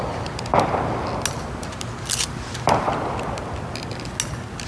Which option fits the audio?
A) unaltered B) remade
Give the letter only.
A